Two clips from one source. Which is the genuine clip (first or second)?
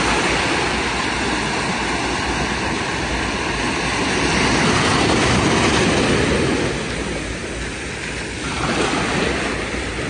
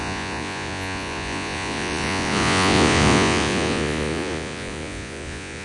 first